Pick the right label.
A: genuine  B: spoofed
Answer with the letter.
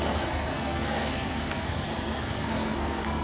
B